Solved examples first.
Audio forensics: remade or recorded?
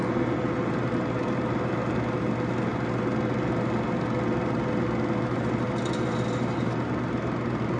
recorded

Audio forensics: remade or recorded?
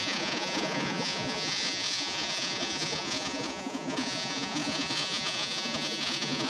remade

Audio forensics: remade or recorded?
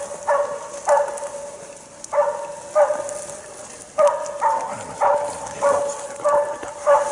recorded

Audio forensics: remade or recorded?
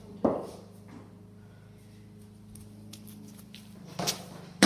recorded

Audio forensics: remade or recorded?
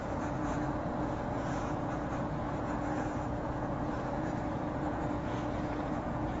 remade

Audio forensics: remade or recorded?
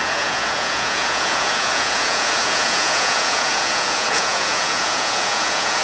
remade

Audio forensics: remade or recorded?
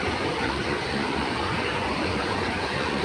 remade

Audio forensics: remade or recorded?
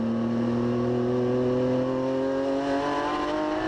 recorded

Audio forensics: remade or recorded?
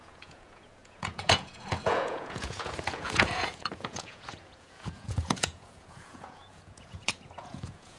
remade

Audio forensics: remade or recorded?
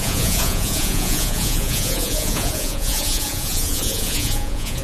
remade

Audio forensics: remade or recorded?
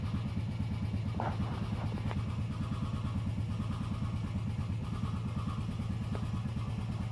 recorded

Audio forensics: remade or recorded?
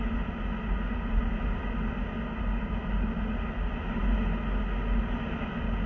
recorded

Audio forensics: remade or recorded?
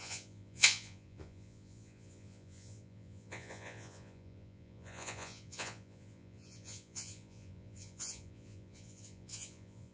remade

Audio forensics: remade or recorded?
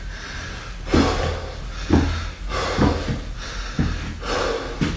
recorded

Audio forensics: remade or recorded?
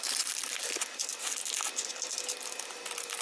recorded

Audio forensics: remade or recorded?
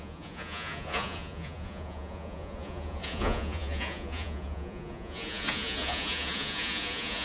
remade